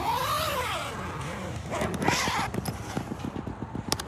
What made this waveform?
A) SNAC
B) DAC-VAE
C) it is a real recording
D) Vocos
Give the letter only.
C